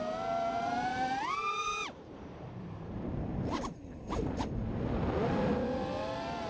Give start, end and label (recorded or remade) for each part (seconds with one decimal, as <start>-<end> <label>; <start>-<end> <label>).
0.0-0.9 recorded; 0.9-4.8 remade; 4.8-6.5 recorded